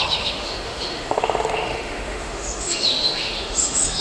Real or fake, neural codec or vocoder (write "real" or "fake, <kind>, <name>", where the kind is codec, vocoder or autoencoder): fake, autoencoder, DAC-VAE